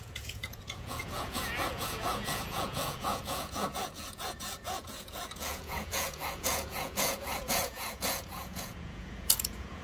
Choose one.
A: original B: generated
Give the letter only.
B